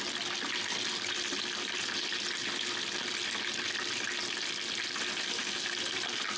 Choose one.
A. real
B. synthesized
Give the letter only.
A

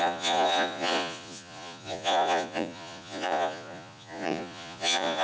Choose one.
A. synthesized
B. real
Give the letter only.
A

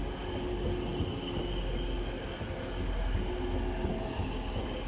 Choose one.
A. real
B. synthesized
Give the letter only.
A